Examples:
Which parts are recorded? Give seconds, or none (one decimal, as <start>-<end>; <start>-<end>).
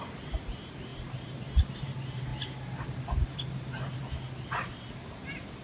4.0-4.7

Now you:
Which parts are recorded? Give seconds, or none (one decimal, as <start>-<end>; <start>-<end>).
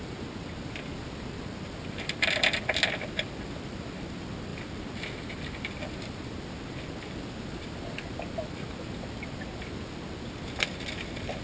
0.0-11.4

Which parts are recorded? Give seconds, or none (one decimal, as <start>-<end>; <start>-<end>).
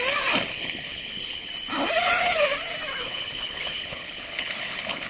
0.0-0.5; 1.5-3.0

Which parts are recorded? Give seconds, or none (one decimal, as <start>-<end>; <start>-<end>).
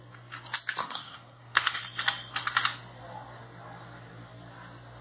0.0-0.8; 1.8-5.0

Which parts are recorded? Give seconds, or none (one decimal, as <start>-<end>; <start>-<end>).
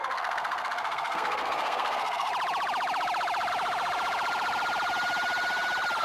2.3-6.0